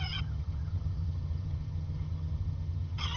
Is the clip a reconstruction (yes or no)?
yes